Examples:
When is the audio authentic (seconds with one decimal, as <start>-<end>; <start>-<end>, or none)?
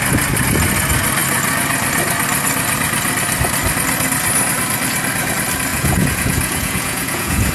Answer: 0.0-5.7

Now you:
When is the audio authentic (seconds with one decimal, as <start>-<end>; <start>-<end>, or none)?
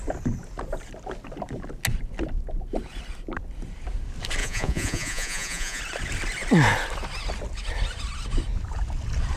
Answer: 0.0-4.4; 5.8-9.4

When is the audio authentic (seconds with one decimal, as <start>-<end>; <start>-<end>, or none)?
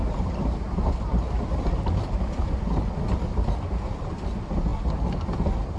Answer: 0.0-5.8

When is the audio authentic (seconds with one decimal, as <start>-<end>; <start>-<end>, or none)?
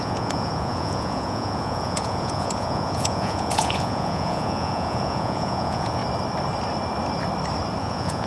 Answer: 6.0-7.8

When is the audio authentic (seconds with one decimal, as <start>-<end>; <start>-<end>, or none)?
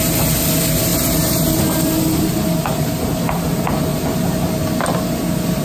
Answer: 0.0-0.9; 1.5-3.9; 4.4-5.6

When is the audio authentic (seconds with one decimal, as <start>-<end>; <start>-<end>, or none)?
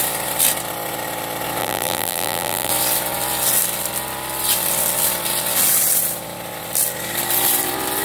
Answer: 0.0-1.6; 2.7-8.0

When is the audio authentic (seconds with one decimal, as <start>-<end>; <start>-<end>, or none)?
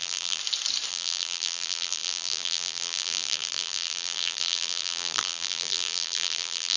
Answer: 0.4-0.9